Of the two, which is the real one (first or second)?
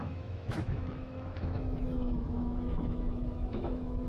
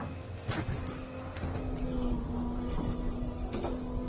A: second